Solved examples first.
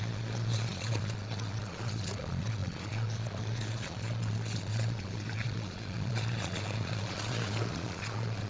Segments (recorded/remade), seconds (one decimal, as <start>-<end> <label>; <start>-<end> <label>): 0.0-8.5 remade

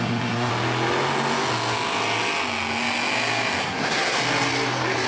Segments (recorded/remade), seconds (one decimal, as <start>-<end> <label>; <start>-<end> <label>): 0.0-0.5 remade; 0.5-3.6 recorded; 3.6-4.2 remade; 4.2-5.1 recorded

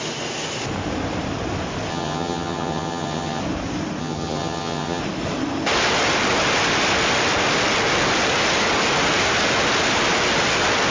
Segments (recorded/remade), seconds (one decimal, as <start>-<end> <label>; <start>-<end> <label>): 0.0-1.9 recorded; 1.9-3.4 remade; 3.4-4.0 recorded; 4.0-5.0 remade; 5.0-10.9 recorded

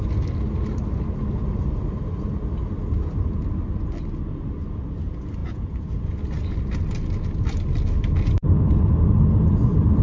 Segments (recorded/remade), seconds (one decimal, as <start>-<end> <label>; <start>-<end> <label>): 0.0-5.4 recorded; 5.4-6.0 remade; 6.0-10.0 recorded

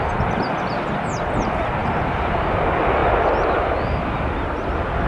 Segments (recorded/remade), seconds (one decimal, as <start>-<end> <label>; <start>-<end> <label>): 0.0-1.8 recorded; 1.8-2.4 remade; 2.4-5.1 recorded

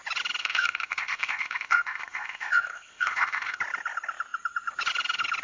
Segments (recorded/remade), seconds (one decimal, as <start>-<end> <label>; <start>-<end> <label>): 0.0-0.4 recorded; 0.4-3.6 remade; 3.6-5.4 recorded

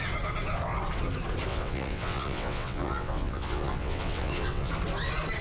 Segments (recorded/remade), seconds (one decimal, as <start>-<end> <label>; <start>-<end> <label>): 0.0-1.5 recorded; 1.5-4.7 remade; 4.7-5.4 recorded